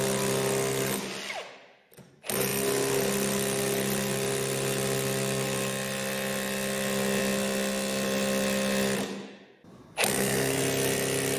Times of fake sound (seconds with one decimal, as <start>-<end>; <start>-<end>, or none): 10.1-10.6